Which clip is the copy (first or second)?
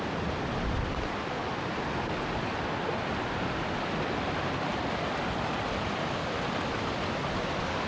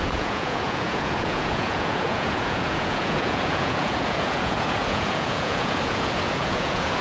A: second